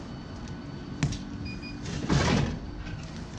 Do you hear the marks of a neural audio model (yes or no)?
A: no